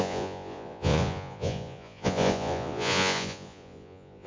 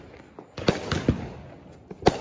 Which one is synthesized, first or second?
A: first